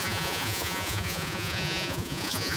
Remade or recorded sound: remade